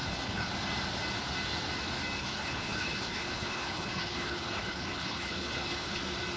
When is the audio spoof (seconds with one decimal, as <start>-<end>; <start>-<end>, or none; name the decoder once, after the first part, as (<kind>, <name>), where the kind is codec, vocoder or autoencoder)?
0.0-0.5 (codec, HILCodec); 2.2-6.0